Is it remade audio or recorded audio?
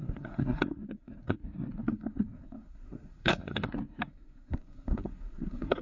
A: remade